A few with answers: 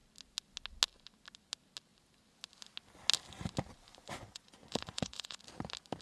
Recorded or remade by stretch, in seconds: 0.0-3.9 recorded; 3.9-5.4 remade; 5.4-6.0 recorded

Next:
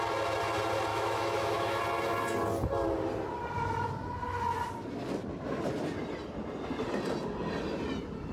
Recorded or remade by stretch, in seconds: 0.0-0.9 recorded; 0.9-1.8 remade; 1.8-8.3 recorded

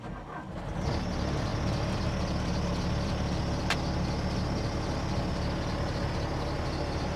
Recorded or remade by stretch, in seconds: 0.0-7.2 recorded

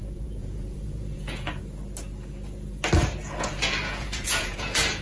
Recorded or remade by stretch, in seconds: 0.0-1.6 remade; 1.6-3.4 recorded; 3.4-5.0 remade

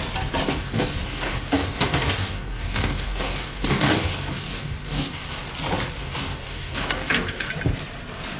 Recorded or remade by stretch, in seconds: 0.0-0.5 recorded; 0.5-5.5 remade; 5.5-6.0 recorded; 6.0-7.5 remade; 7.5-8.4 recorded

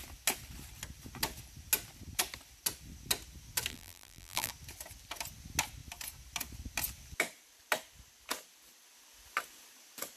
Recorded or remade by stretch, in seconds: 0.0-3.7 recorded; 3.7-4.5 remade; 4.5-10.2 recorded